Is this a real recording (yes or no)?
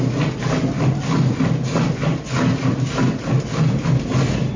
yes